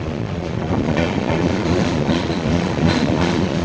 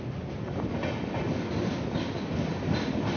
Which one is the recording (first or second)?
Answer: second